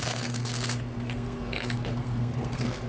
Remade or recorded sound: remade